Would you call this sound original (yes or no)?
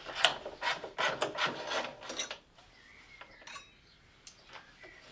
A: yes